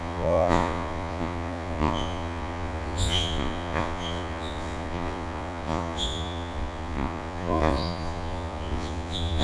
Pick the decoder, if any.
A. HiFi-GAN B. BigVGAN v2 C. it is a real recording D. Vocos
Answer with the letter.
D